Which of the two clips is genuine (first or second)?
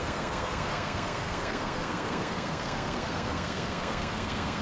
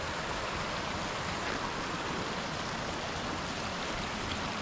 second